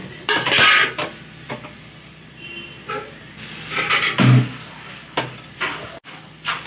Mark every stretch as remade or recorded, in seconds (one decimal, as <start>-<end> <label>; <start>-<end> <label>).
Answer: 0.0-6.7 recorded